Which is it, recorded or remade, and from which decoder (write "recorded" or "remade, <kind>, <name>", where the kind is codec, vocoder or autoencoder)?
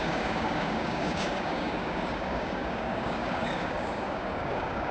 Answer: remade, codec, DAC